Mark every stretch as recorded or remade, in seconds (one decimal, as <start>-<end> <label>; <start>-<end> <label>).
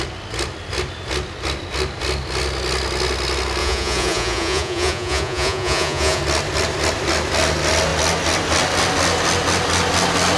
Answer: 0.0-3.6 recorded; 3.6-6.2 remade; 6.2-10.4 recorded